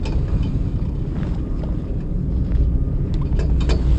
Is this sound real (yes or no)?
yes